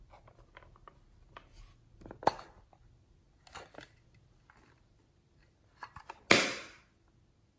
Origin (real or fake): real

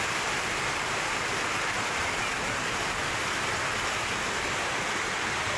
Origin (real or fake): real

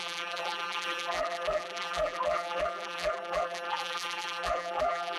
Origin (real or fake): fake